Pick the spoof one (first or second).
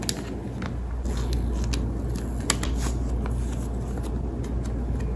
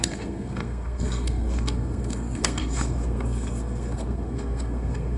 second